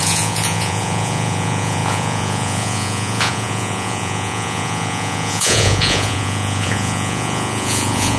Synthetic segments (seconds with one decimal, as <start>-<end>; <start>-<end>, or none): 0.0-8.2